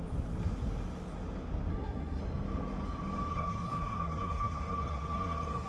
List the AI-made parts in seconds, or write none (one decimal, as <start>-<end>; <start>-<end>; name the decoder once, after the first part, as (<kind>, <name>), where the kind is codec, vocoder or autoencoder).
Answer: 1.7-2.2 (codec, SNAC); 3.3-5.7